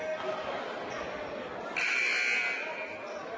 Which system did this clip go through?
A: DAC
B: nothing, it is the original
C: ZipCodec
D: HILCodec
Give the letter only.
B